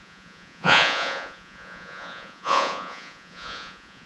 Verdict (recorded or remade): remade